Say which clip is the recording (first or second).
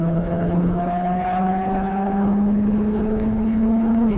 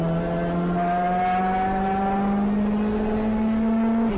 second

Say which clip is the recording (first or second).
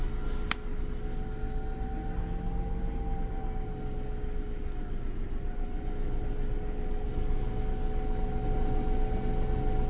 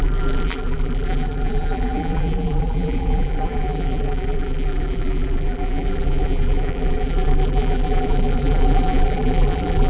first